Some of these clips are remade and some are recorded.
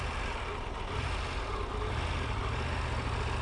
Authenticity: recorded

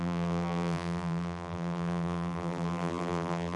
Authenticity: remade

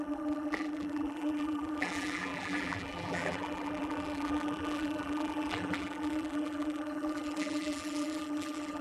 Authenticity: remade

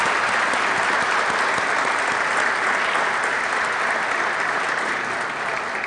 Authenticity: recorded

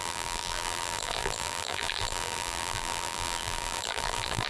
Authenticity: remade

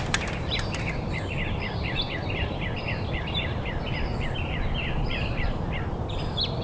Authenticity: remade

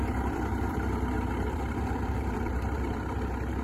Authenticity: remade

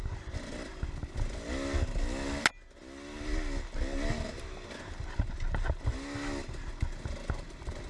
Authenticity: recorded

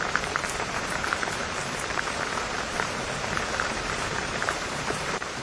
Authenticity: remade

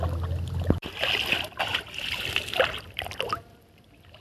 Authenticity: recorded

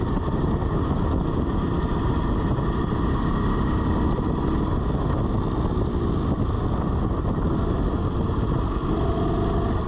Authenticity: recorded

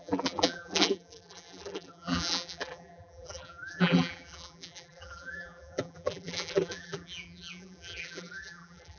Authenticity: remade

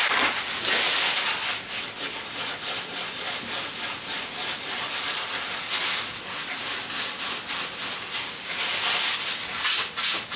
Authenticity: recorded